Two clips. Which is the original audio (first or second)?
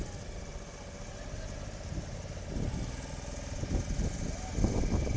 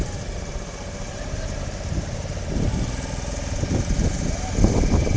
first